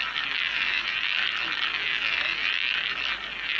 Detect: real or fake real